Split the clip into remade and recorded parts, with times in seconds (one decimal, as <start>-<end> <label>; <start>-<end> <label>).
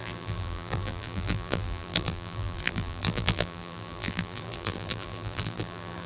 0.0-6.1 remade